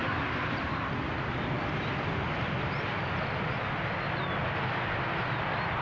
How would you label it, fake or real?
real